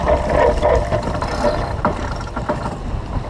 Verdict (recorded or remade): recorded